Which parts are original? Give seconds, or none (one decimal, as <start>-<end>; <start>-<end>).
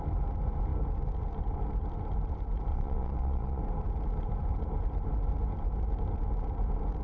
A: 0.0-2.7; 3.6-7.0